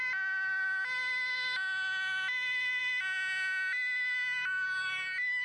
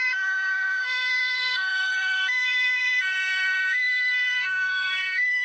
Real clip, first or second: first